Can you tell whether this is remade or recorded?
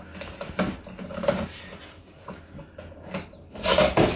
recorded